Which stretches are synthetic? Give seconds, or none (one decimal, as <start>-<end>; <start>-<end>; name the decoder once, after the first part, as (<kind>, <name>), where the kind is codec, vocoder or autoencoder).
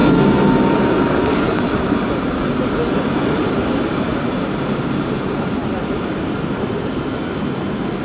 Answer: 5.6-6.9 (vocoder, BigVGAN v2)